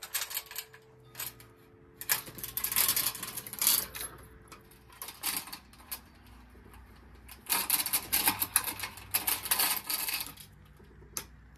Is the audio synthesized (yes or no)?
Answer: no